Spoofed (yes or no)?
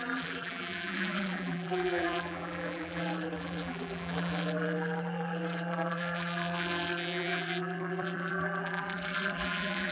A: yes